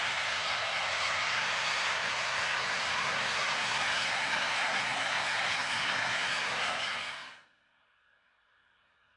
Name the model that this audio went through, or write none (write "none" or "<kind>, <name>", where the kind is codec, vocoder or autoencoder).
codec, SNAC